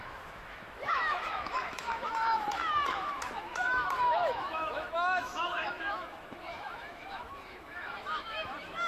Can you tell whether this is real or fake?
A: fake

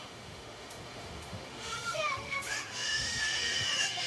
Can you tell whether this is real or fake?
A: fake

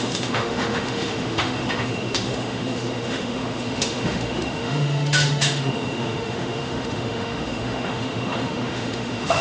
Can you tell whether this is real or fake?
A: fake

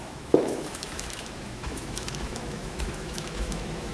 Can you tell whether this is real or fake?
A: fake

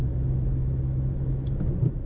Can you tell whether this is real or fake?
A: real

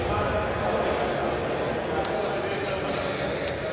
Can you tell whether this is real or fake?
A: real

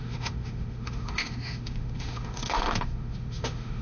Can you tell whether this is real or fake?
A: fake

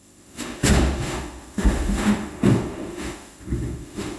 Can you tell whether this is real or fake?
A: fake